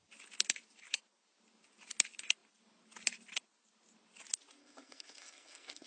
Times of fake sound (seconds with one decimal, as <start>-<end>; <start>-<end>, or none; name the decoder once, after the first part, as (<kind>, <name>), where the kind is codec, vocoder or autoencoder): 4.6-5.9 (codec, SNAC)